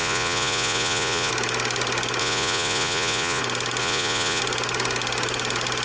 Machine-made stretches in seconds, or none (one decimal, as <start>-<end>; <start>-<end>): 0.0-1.3; 2.2-3.4; 3.8-4.4